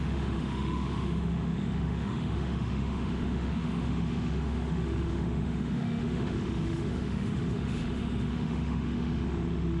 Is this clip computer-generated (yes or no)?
yes